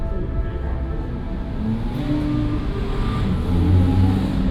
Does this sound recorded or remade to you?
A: recorded